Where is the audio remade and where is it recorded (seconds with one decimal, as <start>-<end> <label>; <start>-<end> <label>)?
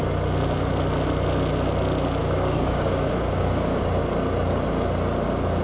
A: 0.0-2.2 recorded; 2.2-3.8 remade; 3.8-5.6 recorded